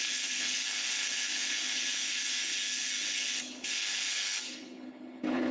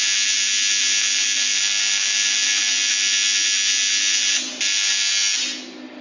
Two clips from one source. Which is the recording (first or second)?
second